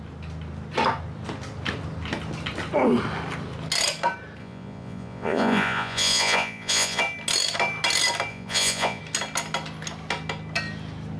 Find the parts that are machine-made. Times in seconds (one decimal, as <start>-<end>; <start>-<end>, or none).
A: 4.4-7.0; 8.3-9.0